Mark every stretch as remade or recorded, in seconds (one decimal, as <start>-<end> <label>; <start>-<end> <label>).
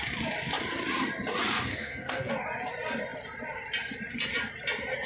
0.0-1.7 recorded; 1.7-2.3 remade; 2.3-5.1 recorded